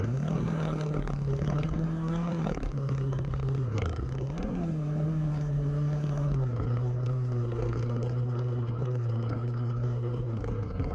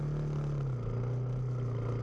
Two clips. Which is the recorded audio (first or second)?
second